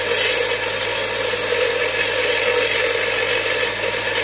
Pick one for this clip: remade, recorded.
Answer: recorded